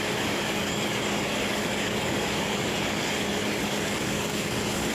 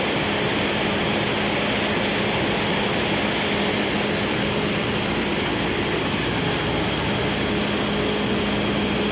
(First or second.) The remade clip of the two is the first